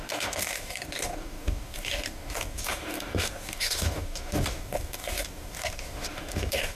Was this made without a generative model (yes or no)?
no